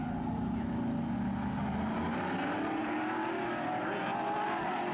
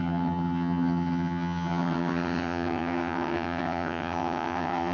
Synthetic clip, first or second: second